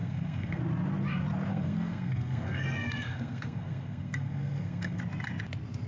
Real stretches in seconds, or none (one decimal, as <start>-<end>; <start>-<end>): 0.6-1.5; 5.0-5.9